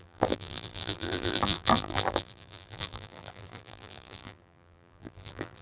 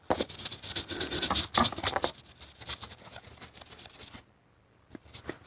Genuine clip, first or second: second